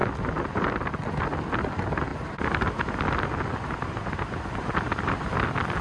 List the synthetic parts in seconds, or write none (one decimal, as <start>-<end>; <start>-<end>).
none